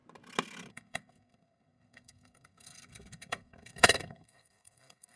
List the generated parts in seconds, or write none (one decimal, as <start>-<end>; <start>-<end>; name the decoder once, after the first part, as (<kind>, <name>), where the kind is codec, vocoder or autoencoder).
0.7-5.2 (codec, SNAC)